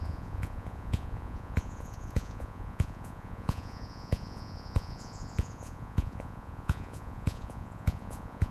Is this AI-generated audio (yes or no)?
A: yes